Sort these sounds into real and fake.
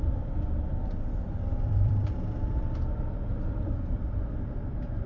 fake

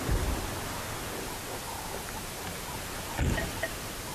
real